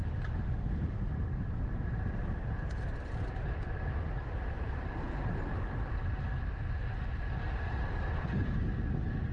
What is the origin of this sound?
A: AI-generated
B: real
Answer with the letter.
B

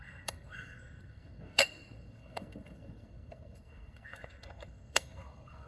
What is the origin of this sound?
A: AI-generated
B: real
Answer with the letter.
A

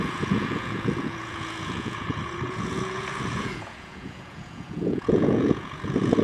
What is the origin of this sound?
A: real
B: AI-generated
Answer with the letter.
B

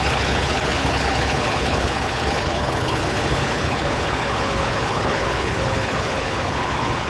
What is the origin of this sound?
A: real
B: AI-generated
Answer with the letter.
B